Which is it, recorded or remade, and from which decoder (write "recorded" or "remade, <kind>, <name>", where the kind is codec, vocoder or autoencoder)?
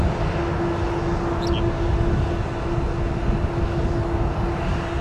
recorded